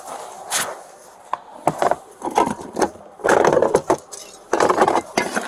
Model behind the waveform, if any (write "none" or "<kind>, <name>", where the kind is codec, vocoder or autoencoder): none